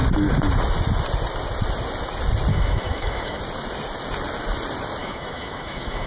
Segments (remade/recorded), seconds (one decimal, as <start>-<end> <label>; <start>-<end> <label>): 0.0-2.5 recorded; 2.5-3.4 remade; 3.4-5.0 recorded; 5.0-6.1 remade